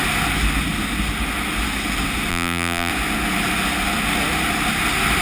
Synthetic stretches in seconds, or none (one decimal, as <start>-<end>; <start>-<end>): 2.3-2.9

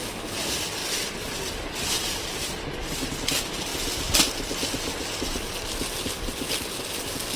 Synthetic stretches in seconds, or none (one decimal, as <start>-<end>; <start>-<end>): none

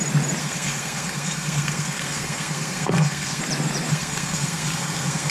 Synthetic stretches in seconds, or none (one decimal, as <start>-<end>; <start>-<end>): 0.4-3.4; 3.9-5.3

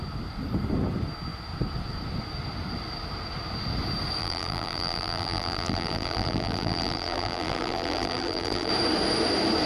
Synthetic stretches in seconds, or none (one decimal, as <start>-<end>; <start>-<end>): 4.2-8.7

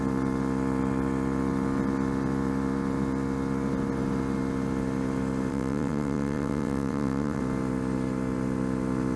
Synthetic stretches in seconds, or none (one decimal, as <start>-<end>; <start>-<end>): 5.5-7.4

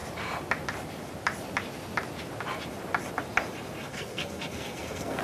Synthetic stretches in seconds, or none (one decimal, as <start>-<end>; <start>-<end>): 3.9-5.2

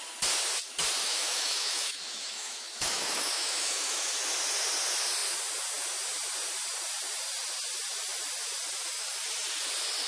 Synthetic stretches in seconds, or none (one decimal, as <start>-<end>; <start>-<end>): 1.0-4.1